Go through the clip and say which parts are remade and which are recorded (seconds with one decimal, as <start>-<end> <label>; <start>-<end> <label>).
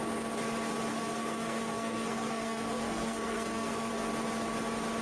0.0-0.9 recorded; 0.9-3.9 remade; 3.9-5.0 recorded